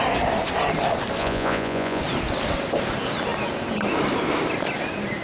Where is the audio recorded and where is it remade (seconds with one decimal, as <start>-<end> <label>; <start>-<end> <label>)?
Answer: 0.0-1.2 recorded; 1.2-2.0 remade; 2.0-5.2 recorded